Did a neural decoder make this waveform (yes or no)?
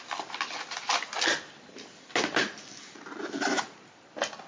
no